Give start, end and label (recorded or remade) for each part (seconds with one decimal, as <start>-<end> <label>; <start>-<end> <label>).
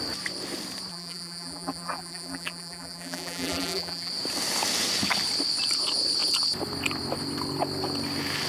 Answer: 0.0-0.9 recorded; 0.9-4.1 remade; 4.1-8.5 recorded